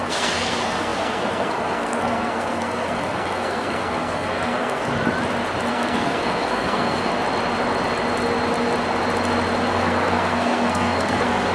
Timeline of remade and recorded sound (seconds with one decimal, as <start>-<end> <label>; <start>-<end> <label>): 0.0-4.9 remade; 4.9-5.7 recorded; 5.7-7.1 remade; 7.1-9.7 recorded; 9.7-11.5 remade